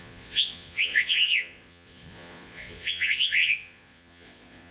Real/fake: fake